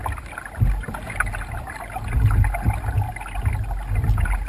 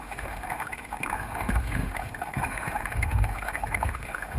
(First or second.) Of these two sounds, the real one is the first